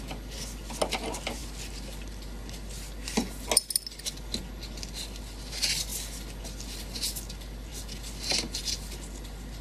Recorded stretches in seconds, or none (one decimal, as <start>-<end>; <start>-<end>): 0.0-9.6

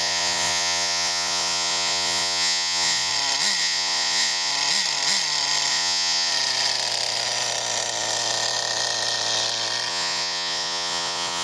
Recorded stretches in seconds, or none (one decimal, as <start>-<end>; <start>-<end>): 3.1-3.6; 4.5-5.7; 6.3-9.9

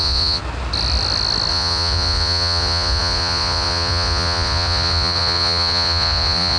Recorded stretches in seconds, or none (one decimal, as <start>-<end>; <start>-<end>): 0.4-1.5

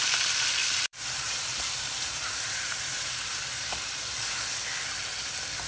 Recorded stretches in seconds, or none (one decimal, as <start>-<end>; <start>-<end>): 0.0-0.6; 4.0-5.7